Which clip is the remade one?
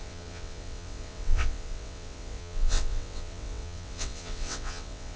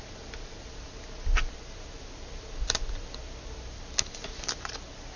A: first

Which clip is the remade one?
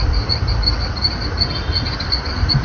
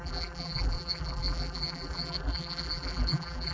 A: second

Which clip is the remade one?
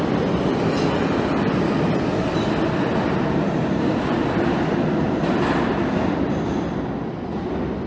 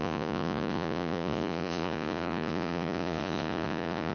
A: second